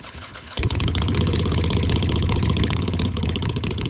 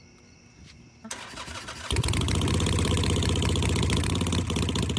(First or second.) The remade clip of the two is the first